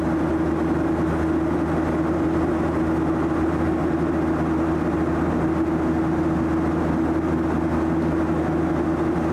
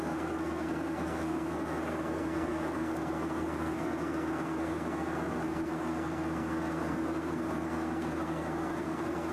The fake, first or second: second